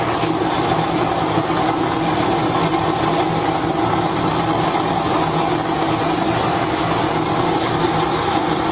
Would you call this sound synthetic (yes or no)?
no